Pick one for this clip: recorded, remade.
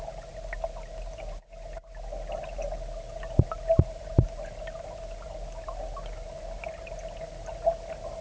recorded